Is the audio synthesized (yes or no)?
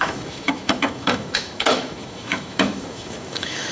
yes